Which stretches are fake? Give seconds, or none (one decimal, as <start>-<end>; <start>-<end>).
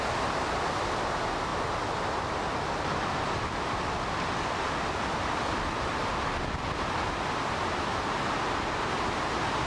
none